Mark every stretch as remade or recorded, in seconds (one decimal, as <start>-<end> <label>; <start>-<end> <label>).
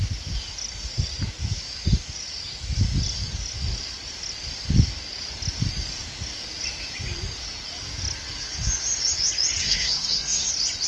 0.0-9.6 recorded; 9.6-10.5 remade; 10.5-10.9 recorded